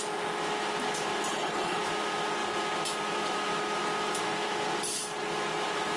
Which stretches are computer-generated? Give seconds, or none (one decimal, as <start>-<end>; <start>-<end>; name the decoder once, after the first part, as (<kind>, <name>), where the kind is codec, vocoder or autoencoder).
1.3-1.8 (codec, HILCodec)